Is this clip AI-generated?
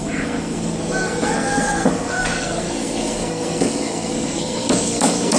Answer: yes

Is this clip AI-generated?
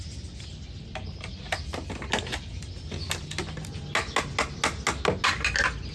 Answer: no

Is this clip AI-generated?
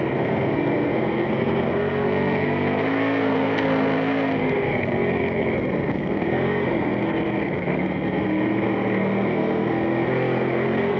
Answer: yes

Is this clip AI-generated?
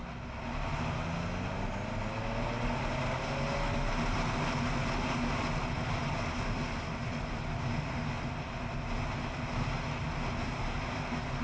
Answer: no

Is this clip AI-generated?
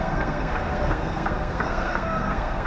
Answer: yes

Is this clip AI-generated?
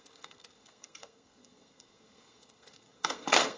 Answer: yes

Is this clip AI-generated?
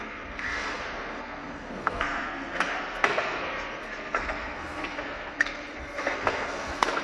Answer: yes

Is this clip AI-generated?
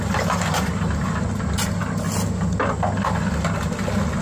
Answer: no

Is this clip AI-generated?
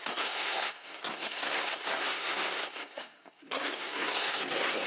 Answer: yes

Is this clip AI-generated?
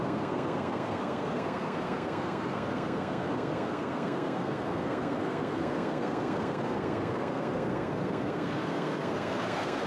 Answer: yes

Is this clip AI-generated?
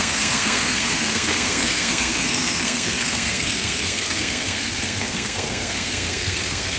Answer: yes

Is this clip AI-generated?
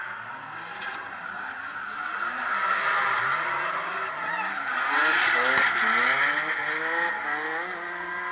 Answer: no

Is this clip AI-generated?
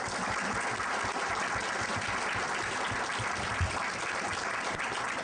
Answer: no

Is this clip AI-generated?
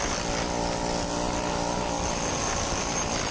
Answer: no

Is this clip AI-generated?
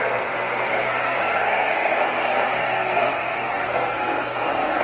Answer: yes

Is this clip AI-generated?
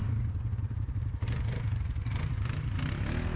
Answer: no